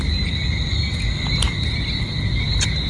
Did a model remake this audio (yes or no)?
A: no